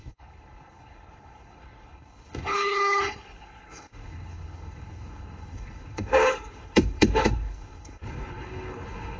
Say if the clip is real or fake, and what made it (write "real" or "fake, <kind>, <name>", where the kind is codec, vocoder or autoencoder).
fake, codec, HILCodec